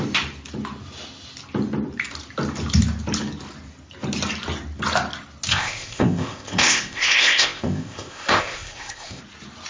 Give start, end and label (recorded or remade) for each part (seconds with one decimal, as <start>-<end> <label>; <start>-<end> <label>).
0.0-5.5 recorded; 5.5-9.2 remade; 9.2-9.7 recorded